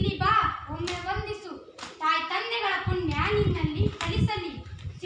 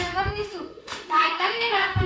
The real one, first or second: first